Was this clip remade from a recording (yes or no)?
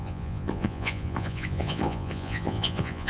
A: yes